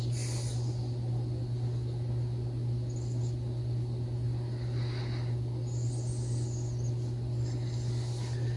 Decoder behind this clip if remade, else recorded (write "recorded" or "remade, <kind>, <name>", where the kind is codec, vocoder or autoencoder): recorded